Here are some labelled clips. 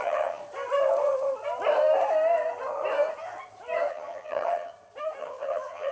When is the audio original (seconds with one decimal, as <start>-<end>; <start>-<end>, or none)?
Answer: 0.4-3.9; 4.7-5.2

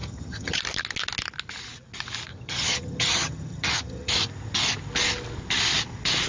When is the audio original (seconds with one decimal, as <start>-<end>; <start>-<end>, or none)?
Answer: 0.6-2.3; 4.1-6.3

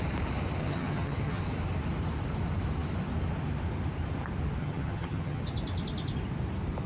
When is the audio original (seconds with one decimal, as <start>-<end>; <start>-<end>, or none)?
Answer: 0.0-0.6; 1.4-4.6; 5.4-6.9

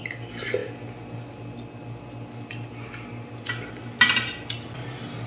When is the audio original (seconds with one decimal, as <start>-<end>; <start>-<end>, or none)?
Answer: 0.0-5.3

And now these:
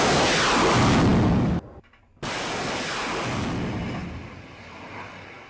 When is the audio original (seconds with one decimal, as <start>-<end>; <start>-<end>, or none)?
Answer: 0.0-5.5

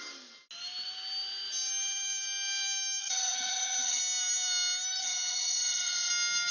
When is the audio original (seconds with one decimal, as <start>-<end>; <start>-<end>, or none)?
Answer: 0.0-3.0; 4.0-5.0; 6.1-6.5

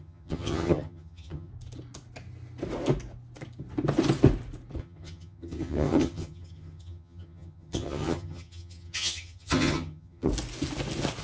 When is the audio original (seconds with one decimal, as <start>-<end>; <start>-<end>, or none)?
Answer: 1.5-4.8; 10.3-11.2

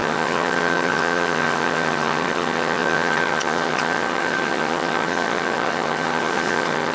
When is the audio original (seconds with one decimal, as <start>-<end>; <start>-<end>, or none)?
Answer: none